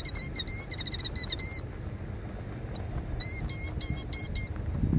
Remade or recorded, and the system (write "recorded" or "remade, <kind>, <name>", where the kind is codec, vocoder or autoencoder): recorded